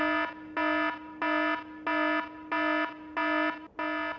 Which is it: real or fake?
real